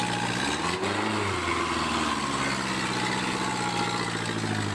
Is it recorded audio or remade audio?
recorded